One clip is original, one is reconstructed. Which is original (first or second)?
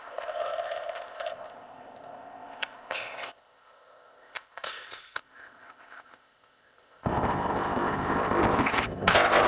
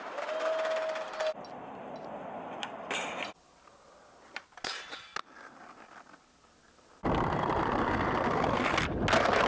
second